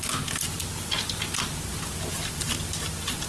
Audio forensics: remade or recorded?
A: recorded